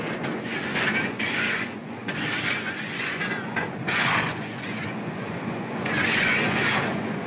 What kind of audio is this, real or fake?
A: fake